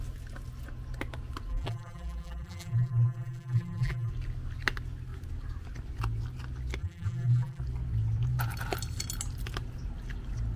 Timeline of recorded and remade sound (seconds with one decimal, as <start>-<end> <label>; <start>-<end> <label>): 0.0-1.5 recorded; 1.5-4.1 remade; 4.1-6.8 recorded; 6.8-7.6 remade; 7.6-10.6 recorded